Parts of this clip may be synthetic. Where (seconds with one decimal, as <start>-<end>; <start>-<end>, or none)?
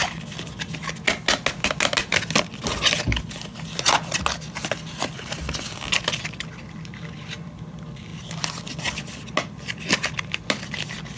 none